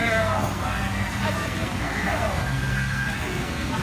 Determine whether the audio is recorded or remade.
remade